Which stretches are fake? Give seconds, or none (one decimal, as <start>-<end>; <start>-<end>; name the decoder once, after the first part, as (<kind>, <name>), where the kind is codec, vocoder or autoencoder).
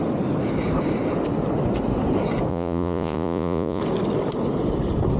2.5-3.8 (vocoder, Vocos)